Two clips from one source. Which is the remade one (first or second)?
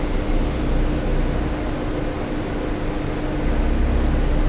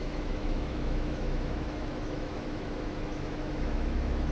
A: second